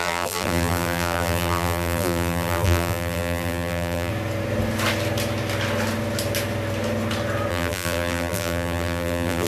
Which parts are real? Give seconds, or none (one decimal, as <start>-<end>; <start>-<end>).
4.1-7.5

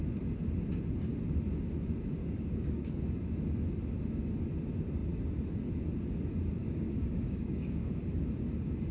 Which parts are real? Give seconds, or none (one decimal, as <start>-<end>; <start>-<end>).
0.0-2.2; 3.0-6.6; 8.0-8.9

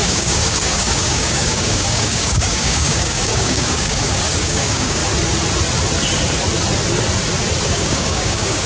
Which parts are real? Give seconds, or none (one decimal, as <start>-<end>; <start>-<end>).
5.0-7.6

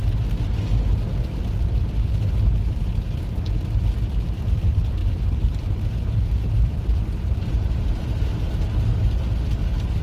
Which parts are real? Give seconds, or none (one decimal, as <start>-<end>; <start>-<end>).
0.0-5.0; 8.6-10.0

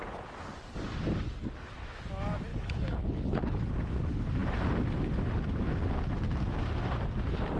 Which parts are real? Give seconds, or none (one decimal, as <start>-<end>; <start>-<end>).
0.0-2.5; 3.7-7.6